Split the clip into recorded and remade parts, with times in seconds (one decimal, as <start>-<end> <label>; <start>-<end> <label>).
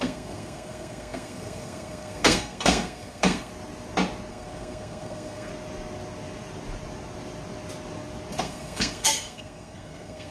0.0-3.5 remade; 3.5-4.3 recorded; 4.3-5.5 remade; 5.5-8.4 recorded; 8.4-10.3 remade